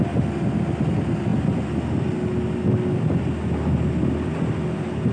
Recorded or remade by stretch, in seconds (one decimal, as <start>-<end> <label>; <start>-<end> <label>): 0.0-5.1 recorded